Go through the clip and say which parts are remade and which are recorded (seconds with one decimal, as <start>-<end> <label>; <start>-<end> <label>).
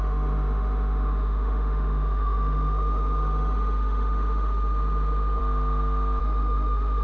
0.0-5.4 remade; 5.4-6.2 recorded; 6.2-7.0 remade